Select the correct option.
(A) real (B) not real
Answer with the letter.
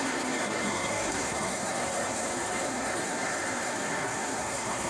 B